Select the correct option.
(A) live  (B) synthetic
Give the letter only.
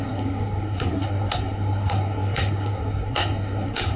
B